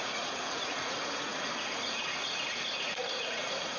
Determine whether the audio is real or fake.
fake